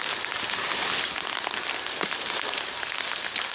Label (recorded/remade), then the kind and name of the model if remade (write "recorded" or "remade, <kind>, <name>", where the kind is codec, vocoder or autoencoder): recorded